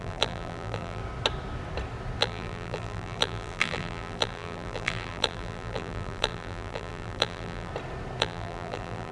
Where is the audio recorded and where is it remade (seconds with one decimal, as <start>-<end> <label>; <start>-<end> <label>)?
0.0-1.0 remade; 1.0-2.2 recorded; 2.2-7.7 remade; 7.7-8.2 recorded; 8.2-9.1 remade